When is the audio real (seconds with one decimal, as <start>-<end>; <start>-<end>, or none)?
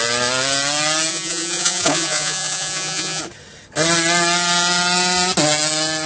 0.0-1.1; 3.2-6.1